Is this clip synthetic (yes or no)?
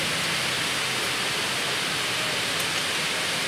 no